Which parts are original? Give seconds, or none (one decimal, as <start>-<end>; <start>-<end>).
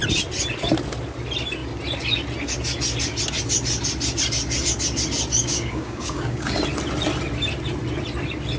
0.0-5.3; 6.6-8.6